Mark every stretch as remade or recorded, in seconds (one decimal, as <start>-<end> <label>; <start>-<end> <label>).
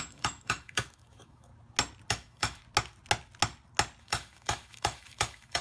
0.0-1.5 remade; 1.5-2.1 recorded; 2.1-2.6 remade; 2.6-4.0 recorded; 4.0-5.6 remade